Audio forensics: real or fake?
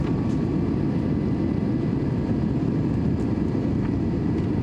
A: real